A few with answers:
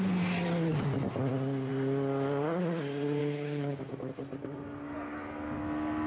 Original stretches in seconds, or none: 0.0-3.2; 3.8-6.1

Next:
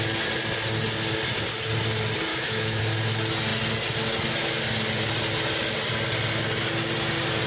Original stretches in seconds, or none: 0.0-2.3; 2.8-7.5